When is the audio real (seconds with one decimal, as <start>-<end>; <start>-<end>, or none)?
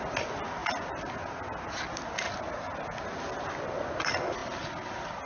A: 0.0-5.3